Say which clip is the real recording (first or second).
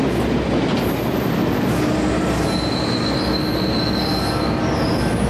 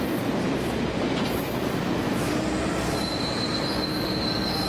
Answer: first